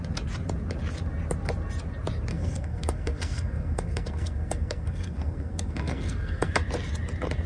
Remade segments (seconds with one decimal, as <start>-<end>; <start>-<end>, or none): 2.3-6.5